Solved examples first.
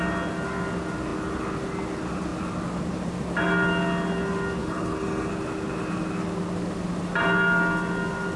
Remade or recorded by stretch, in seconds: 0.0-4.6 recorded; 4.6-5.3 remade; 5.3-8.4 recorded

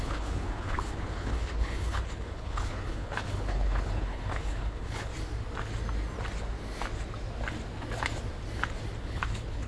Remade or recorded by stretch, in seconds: 0.0-5.1 remade; 5.1-9.0 recorded; 9.0-9.7 remade

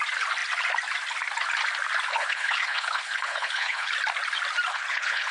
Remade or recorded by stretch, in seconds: 0.0-2.1 recorded; 2.1-3.9 remade; 3.9-4.7 recorded; 4.7-5.3 remade

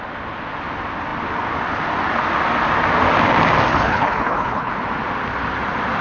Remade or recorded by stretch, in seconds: 0.0-3.7 recorded; 3.7-4.7 remade; 4.7-6.0 recorded

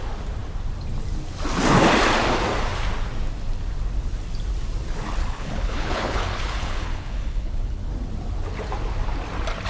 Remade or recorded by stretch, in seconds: 0.0-5.2 recorded; 5.2-7.9 remade; 7.9-9.7 recorded

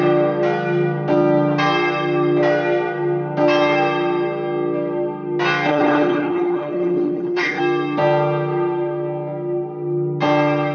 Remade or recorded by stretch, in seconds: 0.0-5.7 recorded; 5.7-7.6 remade; 7.6-10.7 recorded